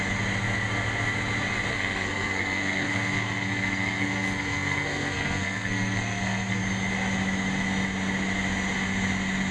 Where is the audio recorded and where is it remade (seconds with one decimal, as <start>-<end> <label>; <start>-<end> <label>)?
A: 0.0-1.7 recorded; 1.7-6.6 remade; 6.6-9.5 recorded